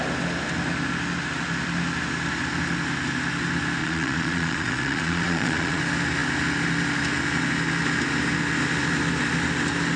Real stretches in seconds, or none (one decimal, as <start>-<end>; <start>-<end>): 0.0-3.8; 5.8-10.0